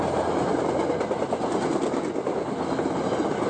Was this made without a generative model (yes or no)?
yes